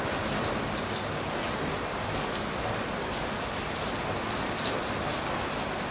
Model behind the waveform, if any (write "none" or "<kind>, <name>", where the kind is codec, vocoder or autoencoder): none